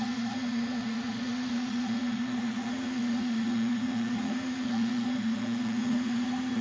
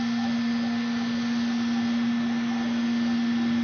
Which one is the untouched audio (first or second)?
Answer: second